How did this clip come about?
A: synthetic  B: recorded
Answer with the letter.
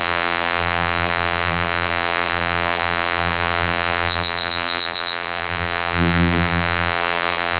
A